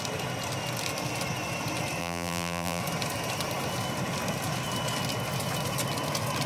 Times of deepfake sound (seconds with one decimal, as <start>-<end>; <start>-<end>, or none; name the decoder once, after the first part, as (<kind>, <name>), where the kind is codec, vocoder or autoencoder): 2.0-2.8 (vocoder, BigVGAN v2)